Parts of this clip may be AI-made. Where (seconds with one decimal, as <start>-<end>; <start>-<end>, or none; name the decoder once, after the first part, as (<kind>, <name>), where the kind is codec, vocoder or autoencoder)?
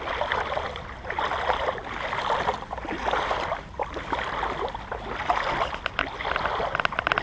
none